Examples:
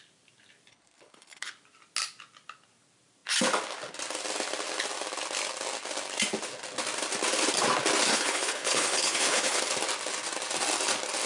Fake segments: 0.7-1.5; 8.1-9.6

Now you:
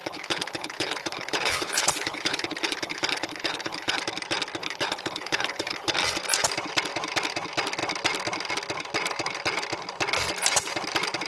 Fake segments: 0.0-4.0; 4.6-5.9

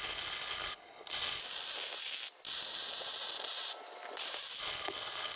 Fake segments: 0.0-1.4; 4.6-5.4

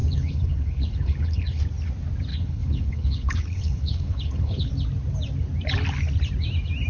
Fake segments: 0.0-1.6; 2.3-4.7

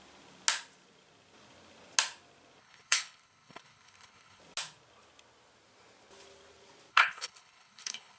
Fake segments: 2.6-4.4; 6.9-8.2

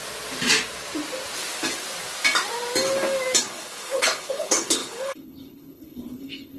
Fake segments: 3.4-6.6

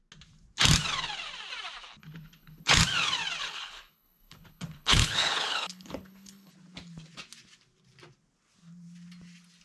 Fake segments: 2.0-2.8; 3.4-6.5

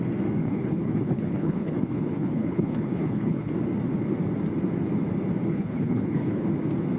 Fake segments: 0.4-3.5; 5.5-6.5